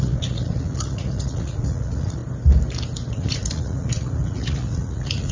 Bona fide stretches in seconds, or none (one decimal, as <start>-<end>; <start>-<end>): 2.2-3.1